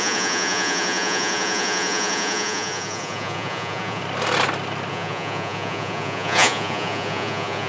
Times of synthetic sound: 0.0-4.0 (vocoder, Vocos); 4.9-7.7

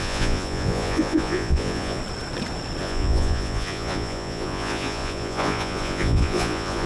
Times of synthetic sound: 0.0-2.0 (vocoder, Vocos); 2.8-6.9